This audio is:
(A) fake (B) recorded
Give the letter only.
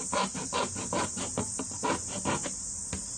B